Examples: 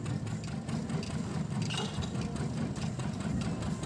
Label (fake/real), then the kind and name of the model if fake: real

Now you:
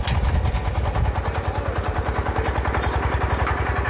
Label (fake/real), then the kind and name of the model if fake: real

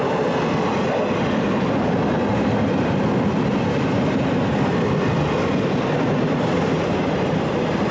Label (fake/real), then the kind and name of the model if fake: real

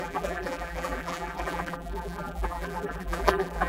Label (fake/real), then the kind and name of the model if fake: fake, vocoder, BigVGAN v2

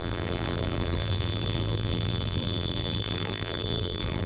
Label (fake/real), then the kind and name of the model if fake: fake, vocoder, BigVGAN v2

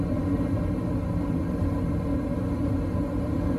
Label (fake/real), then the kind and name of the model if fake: real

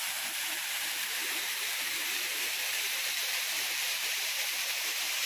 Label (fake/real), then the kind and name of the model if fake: fake, vocoder, BigVGAN v2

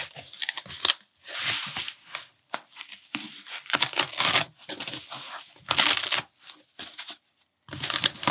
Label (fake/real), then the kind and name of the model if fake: real